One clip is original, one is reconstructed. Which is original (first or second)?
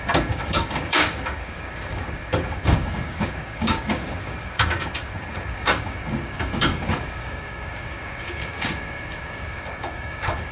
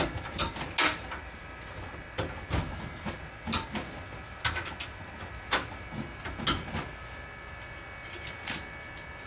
second